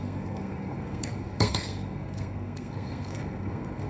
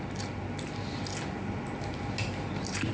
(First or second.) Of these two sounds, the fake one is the first